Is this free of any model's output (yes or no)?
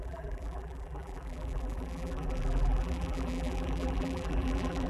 no